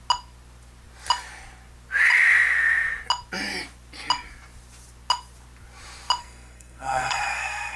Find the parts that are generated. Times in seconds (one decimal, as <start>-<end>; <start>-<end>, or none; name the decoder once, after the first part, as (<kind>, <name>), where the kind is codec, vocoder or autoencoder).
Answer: 6.2-7.8 (codec, SNAC)